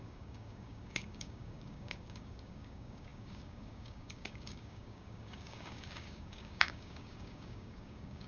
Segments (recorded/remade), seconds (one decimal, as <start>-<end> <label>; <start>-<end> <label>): 0.0-8.3 remade